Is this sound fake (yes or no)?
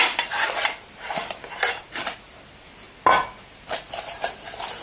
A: no